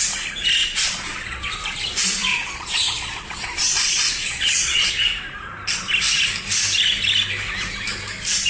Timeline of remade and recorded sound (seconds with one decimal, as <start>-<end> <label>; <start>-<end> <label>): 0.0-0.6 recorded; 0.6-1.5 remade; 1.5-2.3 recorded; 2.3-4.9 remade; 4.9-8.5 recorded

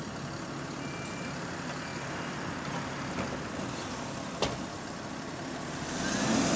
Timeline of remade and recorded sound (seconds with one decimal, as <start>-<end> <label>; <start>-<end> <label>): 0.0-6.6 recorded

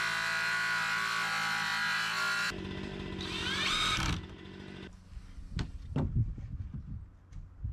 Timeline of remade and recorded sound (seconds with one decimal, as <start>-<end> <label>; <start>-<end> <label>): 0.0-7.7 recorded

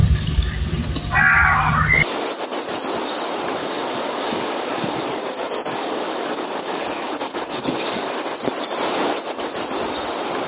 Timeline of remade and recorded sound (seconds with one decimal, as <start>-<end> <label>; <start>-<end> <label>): 0.0-3.6 recorded; 3.6-8.1 remade; 8.1-10.5 recorded